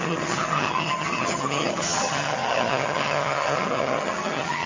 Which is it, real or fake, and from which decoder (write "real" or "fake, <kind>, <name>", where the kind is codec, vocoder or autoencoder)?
fake, vocoder, HiFi-GAN